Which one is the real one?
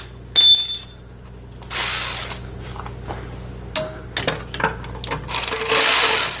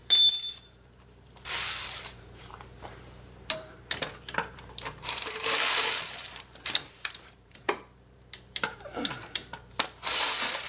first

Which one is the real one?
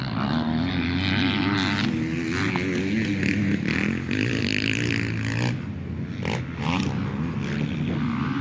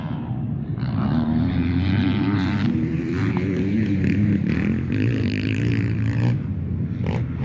first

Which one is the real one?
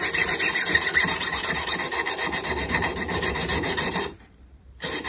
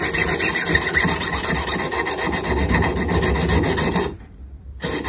second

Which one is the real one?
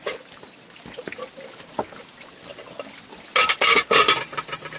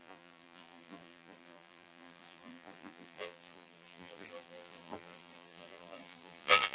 first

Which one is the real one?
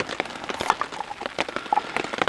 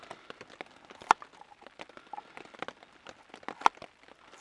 second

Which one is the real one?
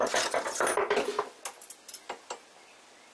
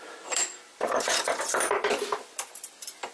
first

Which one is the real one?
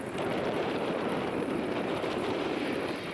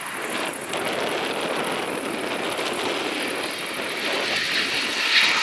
second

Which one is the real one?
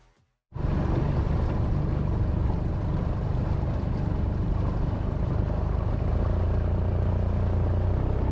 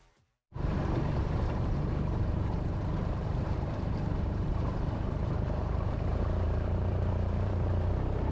first